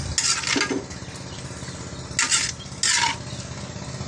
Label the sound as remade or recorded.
recorded